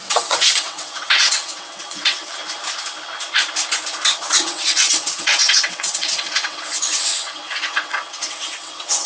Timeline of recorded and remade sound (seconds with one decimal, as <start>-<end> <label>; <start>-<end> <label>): 0.0-2.4 remade; 2.4-4.2 recorded; 4.2-9.1 remade